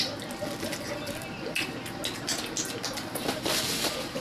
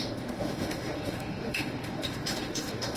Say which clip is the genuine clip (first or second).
first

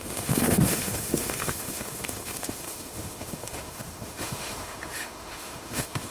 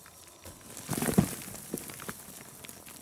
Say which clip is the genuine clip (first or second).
second